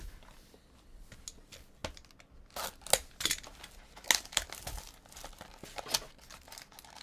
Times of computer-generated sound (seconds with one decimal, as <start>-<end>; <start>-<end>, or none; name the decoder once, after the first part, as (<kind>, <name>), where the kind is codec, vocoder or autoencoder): none